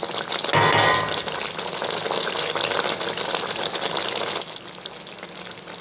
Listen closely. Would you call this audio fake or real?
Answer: real